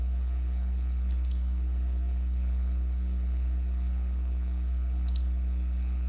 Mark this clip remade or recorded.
remade